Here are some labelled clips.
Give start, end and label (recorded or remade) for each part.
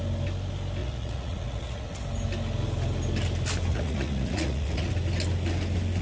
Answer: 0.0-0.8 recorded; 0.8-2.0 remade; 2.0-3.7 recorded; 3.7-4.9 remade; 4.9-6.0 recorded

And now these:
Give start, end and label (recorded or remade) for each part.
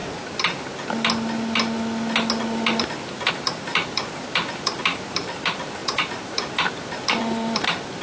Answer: 0.0-3.3 recorded; 3.3-8.0 remade